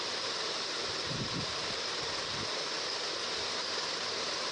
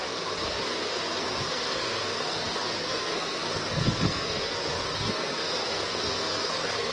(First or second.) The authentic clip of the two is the first